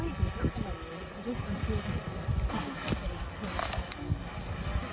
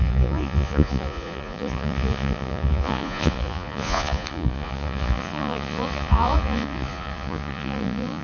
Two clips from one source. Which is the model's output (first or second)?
second